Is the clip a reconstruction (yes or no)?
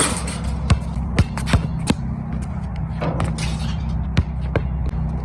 no